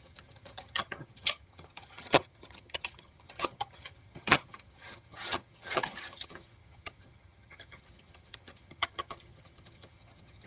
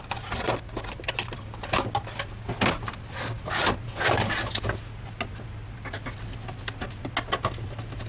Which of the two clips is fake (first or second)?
first